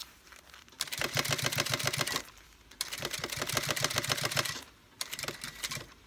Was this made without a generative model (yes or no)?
no